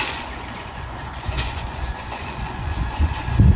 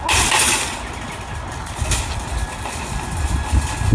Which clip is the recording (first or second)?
second